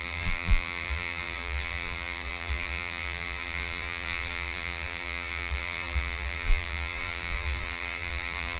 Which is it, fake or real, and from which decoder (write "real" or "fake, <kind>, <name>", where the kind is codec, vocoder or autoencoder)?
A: fake, vocoder, BigVGAN v2